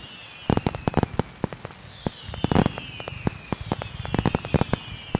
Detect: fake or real real